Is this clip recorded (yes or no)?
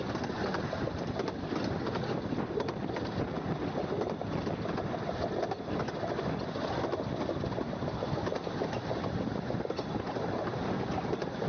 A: yes